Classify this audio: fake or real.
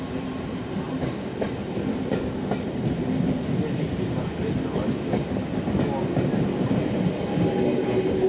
real